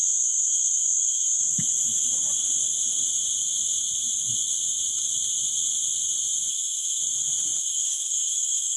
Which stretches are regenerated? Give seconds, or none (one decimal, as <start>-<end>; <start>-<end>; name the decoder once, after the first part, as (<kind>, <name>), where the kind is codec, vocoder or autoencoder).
0.0-1.4 (autoencoder, DAC-VAE); 6.5-7.0; 7.6-8.8